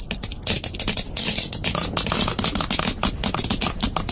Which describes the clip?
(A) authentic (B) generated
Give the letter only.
A